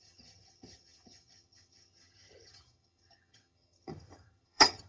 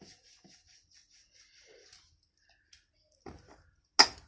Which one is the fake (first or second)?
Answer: first